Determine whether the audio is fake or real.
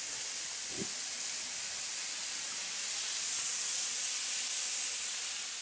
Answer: real